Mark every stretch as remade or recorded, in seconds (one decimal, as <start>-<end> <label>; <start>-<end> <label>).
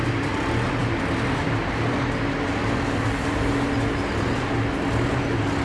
0.0-5.6 recorded